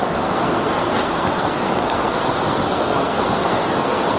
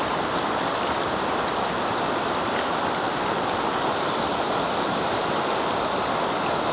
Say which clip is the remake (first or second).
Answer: first